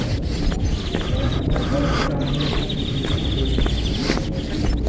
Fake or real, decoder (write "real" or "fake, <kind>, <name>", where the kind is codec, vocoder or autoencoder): real